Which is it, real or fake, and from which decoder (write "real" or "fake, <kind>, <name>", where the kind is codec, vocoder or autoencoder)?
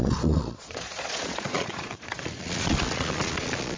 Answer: fake, vocoder, Vocos